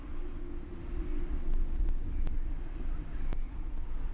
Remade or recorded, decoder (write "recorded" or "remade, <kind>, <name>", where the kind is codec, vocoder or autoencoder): recorded